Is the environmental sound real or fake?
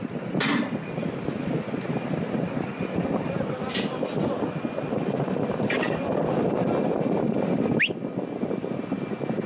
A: real